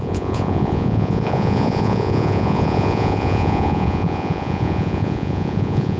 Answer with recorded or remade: remade